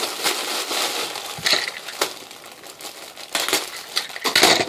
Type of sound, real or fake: real